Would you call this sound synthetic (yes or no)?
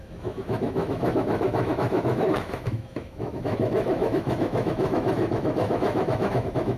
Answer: yes